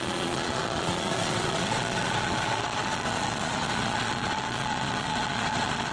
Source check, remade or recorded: remade